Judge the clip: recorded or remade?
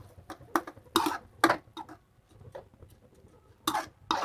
recorded